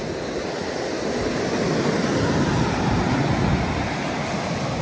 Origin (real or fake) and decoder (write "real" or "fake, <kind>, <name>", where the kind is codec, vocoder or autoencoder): real